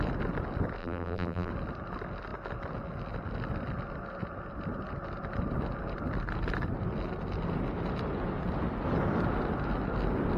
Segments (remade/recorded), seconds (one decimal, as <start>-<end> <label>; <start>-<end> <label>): 0.0-0.8 recorded; 0.8-1.5 remade; 1.5-10.4 recorded